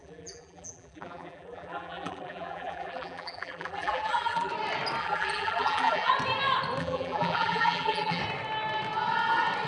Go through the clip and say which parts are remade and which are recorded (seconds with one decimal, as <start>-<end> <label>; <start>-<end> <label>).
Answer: 0.0-4.5 remade; 4.5-5.0 recorded; 5.0-6.1 remade; 6.1-6.8 recorded; 6.8-8.2 remade; 8.2-9.7 recorded